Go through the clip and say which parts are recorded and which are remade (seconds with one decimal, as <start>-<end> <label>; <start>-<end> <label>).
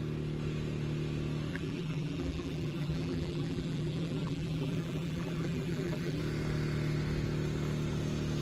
0.0-1.5 recorded; 1.5-6.2 remade; 6.2-8.4 recorded